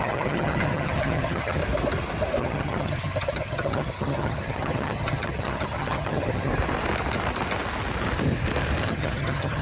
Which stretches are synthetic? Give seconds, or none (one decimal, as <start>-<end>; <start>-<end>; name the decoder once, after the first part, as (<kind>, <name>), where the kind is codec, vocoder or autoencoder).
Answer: 0.0-1.6 (vocoder, HiFi-GAN); 2.4-6.5; 8.8-9.6